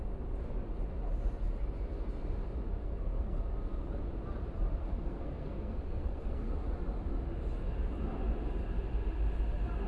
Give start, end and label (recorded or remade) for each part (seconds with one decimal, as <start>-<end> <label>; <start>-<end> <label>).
0.0-2.8 recorded; 2.8-3.4 remade; 3.4-4.8 recorded; 4.8-6.5 remade; 6.5-9.9 recorded